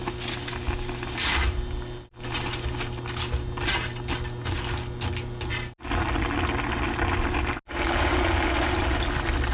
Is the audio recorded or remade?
recorded